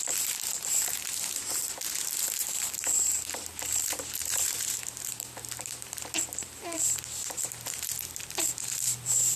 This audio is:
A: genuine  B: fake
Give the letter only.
B